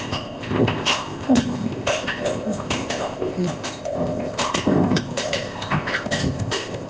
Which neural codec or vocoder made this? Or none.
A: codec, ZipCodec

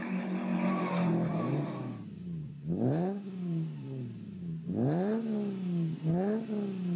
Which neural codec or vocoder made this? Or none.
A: vocoder, BigVGAN v2